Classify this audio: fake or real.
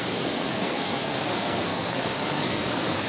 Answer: fake